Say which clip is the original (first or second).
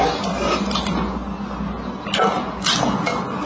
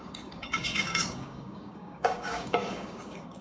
first